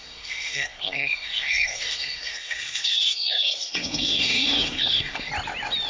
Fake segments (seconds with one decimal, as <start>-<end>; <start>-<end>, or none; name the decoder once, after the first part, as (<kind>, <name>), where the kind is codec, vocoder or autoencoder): 0.0-5.3 (codec, SNAC)